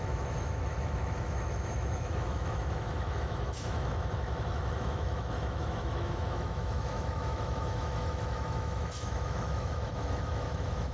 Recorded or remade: remade